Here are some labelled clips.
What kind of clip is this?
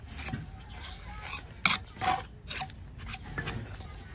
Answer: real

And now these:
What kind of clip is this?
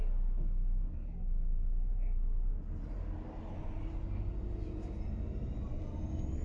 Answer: real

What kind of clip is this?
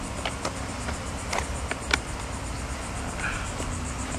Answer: real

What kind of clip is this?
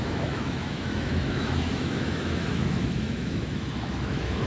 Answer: fake